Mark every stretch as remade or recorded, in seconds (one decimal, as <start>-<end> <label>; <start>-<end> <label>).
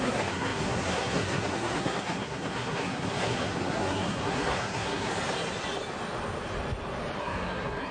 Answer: 0.0-5.1 remade; 5.1-7.2 recorded; 7.2-7.9 remade